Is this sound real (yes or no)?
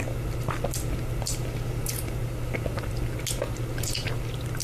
yes